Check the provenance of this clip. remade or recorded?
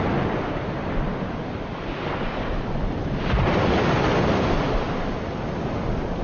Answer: recorded